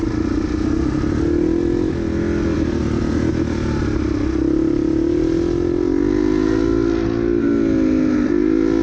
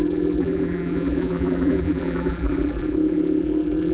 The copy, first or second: second